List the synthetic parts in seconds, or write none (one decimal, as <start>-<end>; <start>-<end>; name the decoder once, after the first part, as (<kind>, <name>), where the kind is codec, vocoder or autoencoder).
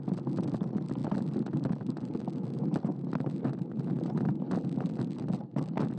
none